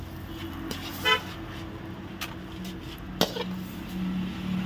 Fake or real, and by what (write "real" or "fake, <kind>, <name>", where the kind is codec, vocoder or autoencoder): real